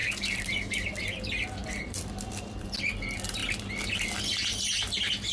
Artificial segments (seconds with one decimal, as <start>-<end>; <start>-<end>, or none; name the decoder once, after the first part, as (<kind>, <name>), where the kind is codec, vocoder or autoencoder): 0.0-1.2 (vocoder, BigVGAN v2); 1.6-2.8